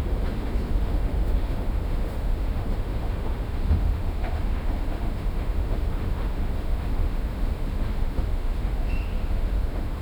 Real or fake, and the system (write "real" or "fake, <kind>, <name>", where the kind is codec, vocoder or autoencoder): fake, autoencoder, DAC-VAE